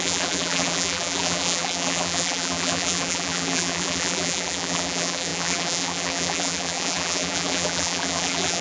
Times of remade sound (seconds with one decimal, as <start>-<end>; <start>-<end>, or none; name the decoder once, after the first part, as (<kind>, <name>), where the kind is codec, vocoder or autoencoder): 0.0-8.6 (vocoder, BigVGAN v2)

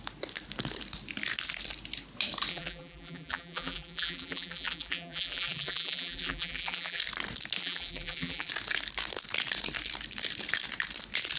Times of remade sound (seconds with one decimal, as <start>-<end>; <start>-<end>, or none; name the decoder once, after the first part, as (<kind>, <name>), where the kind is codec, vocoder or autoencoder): 2.5-7.0 (vocoder, BigVGAN v2); 7.6-8.5

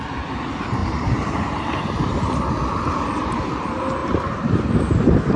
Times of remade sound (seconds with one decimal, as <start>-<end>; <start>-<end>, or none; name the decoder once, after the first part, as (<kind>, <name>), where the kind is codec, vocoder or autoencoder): 0.8-2.5 (vocoder, BigVGAN v2); 4.0-5.4